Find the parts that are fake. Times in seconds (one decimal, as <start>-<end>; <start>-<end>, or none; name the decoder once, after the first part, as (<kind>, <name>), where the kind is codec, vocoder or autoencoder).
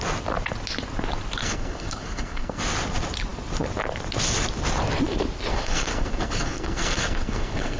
1.4-2.6 (codec, SNAC); 5.5-7.8